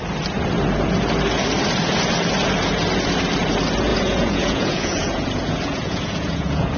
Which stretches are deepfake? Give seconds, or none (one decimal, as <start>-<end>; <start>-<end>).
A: 3.9-6.8